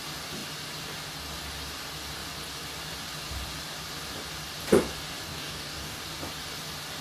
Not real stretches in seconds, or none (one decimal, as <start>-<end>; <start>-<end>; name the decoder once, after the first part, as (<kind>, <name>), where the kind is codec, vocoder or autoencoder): 5.3-6.0 (codec, DAC)